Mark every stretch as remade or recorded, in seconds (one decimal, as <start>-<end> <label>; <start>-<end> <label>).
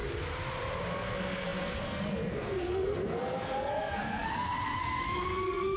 0.0-0.9 recorded; 0.9-5.8 remade